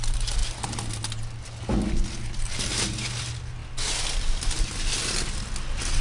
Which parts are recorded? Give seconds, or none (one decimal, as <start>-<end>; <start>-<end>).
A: 0.0-6.0